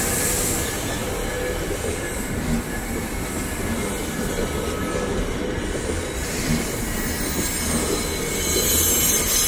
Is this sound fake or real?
real